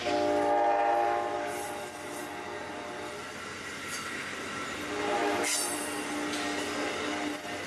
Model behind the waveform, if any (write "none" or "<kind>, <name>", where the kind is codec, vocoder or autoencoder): none